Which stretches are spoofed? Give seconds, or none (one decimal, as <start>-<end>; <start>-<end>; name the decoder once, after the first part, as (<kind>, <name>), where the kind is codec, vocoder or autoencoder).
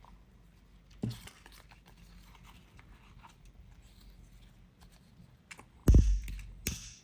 none